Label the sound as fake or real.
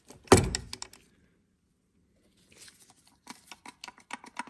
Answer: real